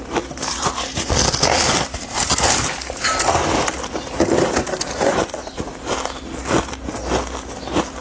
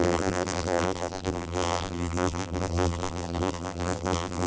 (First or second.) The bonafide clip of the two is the first